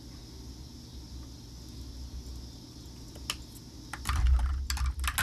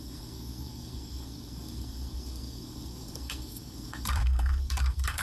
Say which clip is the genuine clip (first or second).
first